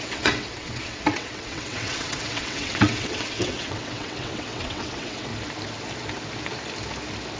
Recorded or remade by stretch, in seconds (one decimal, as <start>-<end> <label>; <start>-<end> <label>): 0.0-5.3 remade; 5.3-7.4 recorded